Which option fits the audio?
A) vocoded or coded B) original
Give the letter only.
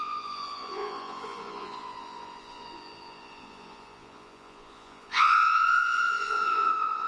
A